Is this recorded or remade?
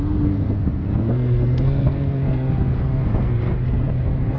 remade